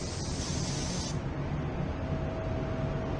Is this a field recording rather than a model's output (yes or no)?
yes